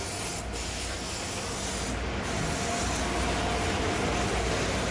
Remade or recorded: recorded